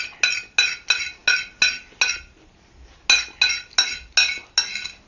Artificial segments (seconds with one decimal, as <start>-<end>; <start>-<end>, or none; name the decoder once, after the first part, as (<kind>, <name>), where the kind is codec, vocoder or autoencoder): none